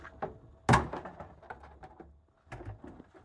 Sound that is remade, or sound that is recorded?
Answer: recorded